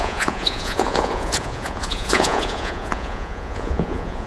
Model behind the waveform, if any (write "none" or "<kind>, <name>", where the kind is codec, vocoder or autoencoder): vocoder, Vocos